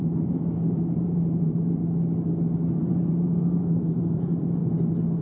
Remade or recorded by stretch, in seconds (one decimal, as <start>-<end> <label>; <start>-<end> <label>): 0.0-1.8 remade; 1.8-2.8 recorded; 2.8-4.6 remade; 4.6-5.2 recorded

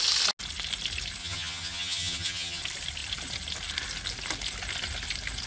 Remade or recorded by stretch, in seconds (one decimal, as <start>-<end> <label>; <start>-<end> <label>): 0.0-1.2 recorded; 1.2-2.6 remade; 2.6-5.5 recorded